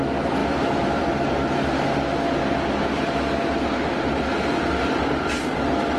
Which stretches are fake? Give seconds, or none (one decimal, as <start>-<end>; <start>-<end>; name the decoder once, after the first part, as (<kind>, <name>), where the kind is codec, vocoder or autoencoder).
0.4-1.1 (vocoder, BigVGAN v2)